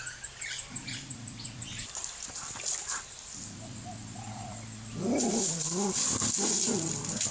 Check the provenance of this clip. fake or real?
fake